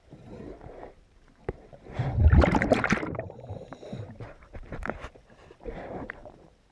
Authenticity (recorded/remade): remade